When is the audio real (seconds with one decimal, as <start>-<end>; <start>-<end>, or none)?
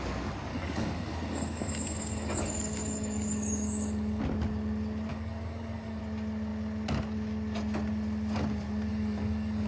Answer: 0.0-0.5; 4.2-5.1; 6.0-8.9